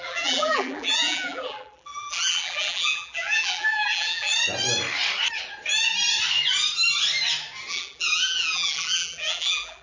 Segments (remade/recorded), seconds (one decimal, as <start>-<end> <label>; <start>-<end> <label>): 0.0-4.3 remade; 4.3-7.7 recorded; 7.7-9.8 remade